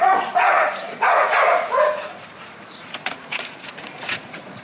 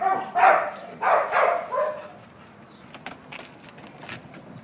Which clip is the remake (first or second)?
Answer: first